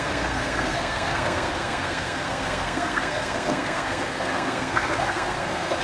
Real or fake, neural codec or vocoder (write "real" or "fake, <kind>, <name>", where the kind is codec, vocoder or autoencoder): fake, codec, SNAC